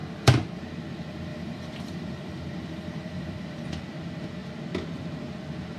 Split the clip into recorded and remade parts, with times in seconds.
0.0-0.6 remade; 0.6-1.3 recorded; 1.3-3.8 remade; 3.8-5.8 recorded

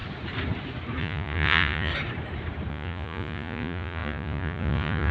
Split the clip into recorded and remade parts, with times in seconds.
0.0-1.0 recorded; 1.0-1.9 remade; 1.9-2.7 recorded; 2.7-5.1 remade